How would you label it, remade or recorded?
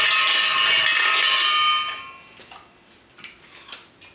recorded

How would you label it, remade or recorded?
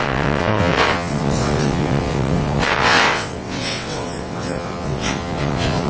remade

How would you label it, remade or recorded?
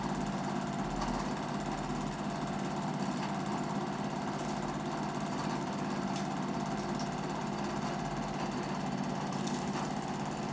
recorded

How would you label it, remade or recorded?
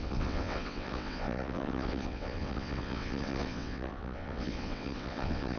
remade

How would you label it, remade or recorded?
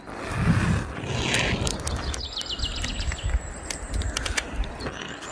recorded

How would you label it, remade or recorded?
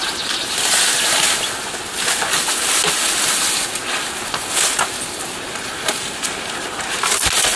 recorded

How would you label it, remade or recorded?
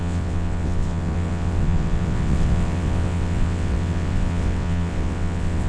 remade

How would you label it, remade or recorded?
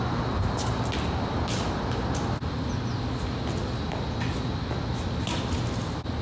recorded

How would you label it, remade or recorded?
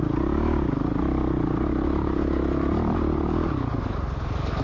recorded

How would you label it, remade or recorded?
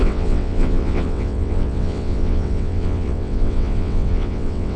remade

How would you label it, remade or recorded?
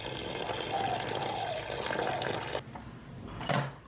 recorded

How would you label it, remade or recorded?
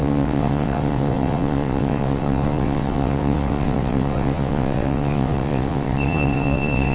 remade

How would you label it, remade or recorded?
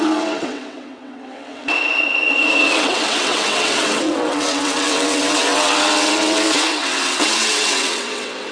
remade